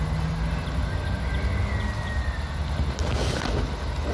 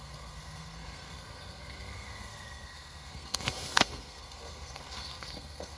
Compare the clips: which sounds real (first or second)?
first